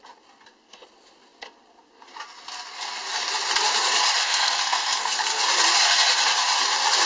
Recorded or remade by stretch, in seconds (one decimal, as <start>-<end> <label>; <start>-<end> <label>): 0.0-4.2 recorded; 4.2-5.4 remade; 5.4-7.1 recorded